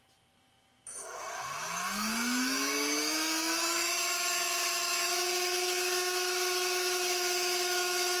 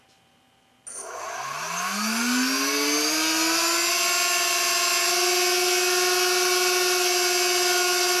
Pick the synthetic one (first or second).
first